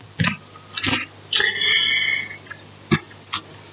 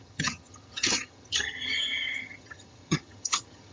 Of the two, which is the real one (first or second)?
first